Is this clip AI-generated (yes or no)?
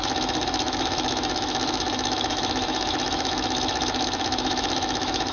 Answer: yes